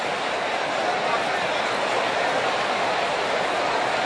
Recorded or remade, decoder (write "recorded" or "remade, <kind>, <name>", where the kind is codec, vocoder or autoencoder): recorded